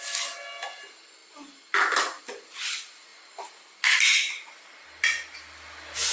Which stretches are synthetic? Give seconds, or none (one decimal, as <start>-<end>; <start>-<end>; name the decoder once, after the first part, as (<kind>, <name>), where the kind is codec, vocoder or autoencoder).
none